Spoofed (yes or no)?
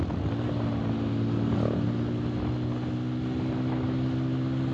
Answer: no